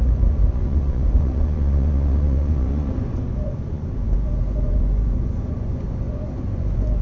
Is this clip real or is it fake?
fake